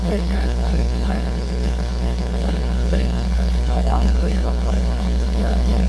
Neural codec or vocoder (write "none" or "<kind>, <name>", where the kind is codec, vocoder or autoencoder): codec, SNAC